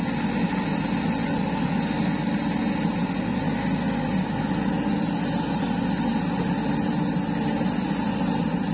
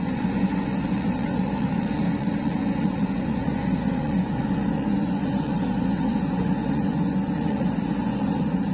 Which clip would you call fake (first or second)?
second